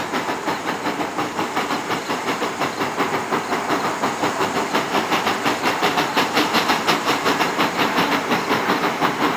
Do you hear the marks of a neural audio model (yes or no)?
yes